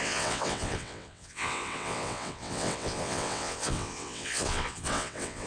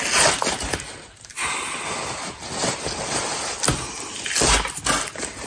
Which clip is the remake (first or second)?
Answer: first